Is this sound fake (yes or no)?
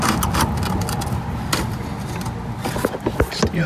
no